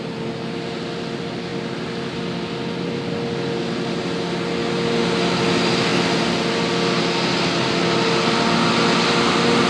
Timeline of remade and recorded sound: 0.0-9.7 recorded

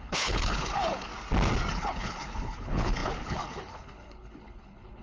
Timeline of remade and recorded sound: 0.0-1.1 remade; 1.1-1.7 recorded; 1.7-5.0 remade

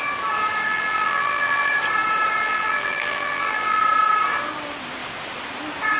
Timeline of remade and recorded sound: 0.0-0.7 recorded; 0.7-1.7 remade; 1.7-2.4 recorded; 2.4-3.8 remade; 3.8-6.0 recorded

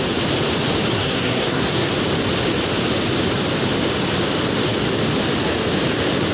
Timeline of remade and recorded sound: 0.0-0.9 recorded; 0.9-1.9 remade; 1.9-6.3 recorded